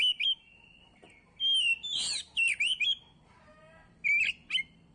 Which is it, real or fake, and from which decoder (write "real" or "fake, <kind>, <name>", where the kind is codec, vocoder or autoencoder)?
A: real